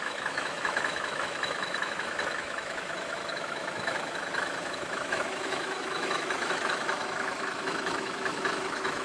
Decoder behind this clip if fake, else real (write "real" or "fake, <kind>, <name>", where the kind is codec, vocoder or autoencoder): fake, autoencoder, DAC-VAE